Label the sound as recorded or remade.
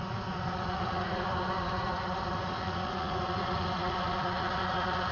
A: remade